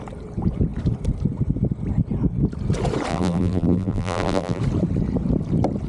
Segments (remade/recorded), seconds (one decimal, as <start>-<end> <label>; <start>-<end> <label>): 0.0-3.1 recorded; 3.1-4.6 remade; 4.6-5.9 recorded